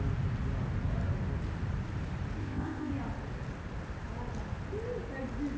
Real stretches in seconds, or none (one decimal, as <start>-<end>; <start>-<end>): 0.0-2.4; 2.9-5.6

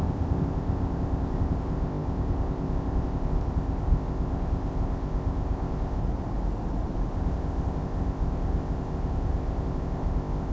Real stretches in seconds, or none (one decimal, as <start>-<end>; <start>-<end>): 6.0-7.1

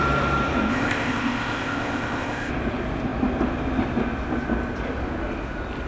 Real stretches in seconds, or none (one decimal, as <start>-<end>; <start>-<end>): 0.0-0.7; 2.5-5.9

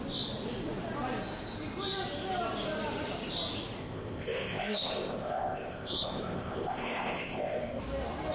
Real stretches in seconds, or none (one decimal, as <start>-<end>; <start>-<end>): 0.0-3.8; 7.8-8.3